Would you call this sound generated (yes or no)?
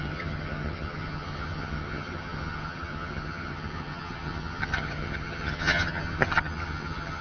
yes